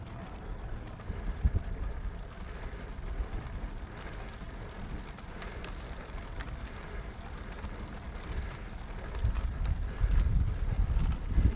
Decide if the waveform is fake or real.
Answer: real